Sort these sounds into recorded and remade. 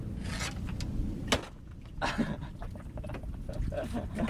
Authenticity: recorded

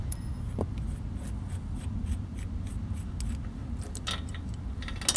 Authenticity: recorded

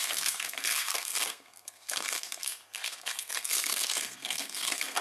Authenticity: remade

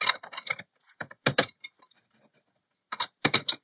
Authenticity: recorded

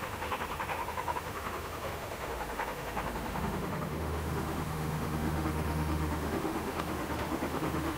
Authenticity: remade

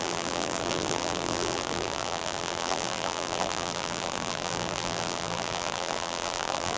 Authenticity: remade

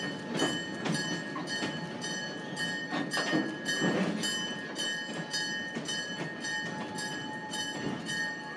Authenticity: recorded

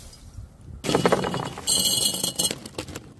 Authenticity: recorded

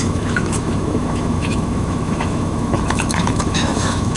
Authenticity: remade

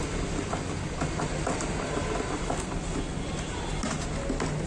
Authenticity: recorded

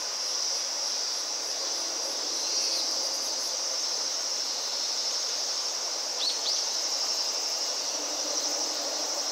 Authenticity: remade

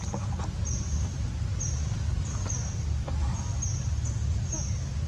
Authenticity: recorded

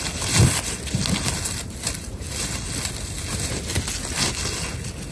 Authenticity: recorded